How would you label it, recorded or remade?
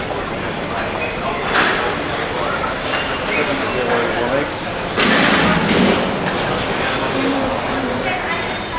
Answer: recorded